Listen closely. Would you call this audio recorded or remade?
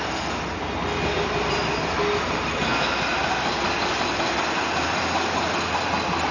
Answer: recorded